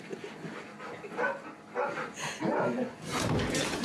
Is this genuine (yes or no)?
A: yes